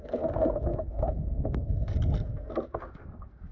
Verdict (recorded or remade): remade